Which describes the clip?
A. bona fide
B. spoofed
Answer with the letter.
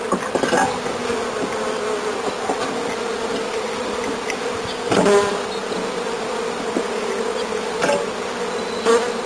A